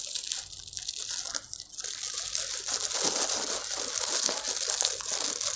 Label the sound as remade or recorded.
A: recorded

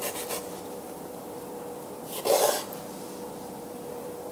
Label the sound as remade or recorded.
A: remade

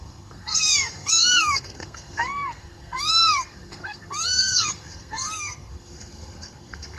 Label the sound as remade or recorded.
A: remade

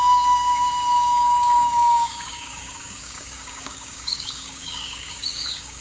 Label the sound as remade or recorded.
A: remade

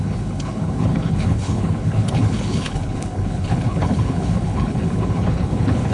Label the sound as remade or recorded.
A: remade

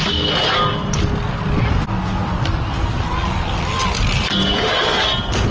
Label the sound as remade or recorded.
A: recorded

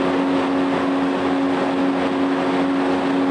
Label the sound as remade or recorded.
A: recorded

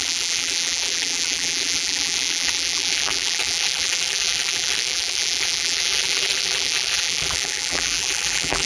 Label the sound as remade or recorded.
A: remade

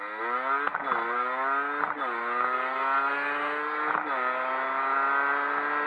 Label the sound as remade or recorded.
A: recorded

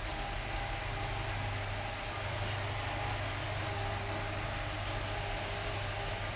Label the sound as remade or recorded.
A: recorded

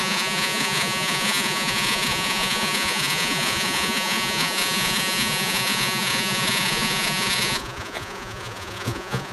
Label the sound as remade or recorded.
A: remade